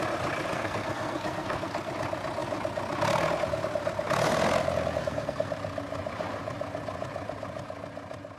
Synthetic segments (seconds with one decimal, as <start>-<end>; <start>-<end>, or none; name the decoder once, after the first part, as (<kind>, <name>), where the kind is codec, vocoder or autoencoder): 0.5-1.9 (codec, SNAC); 5.0-5.5